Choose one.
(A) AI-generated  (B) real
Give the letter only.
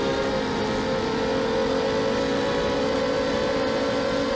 B